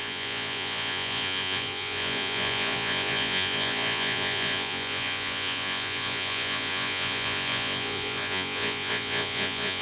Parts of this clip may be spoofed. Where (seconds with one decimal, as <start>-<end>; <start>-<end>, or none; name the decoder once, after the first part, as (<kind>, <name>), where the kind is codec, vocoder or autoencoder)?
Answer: 0.0-9.8 (vocoder, Vocos)